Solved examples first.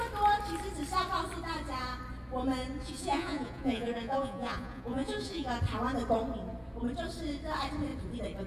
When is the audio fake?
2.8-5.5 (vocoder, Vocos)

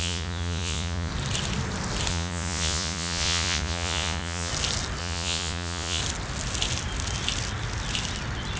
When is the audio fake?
0.0-1.1 (vocoder, Vocos); 2.1-4.5; 5.0-6.0

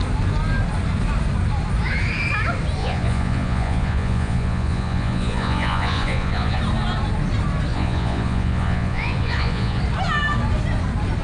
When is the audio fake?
2.8-6.6 (vocoder, Vocos); 7.7-9.8

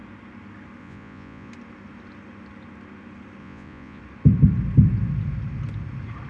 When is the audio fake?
0.8-1.5 (vocoder, Vocos); 3.4-4.0